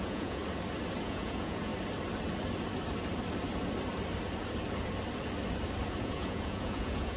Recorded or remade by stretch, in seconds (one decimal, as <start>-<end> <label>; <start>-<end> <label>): 0.0-0.4 remade; 0.4-1.0 recorded; 1.0-1.7 remade; 1.7-6.0 recorded; 6.0-7.2 remade